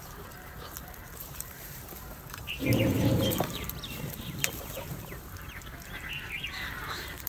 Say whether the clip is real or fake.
fake